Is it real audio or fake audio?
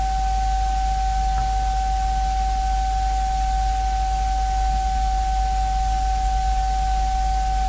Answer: real